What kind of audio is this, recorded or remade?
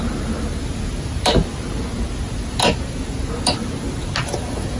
recorded